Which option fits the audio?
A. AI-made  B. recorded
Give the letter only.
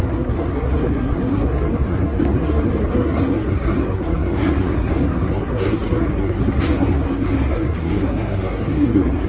A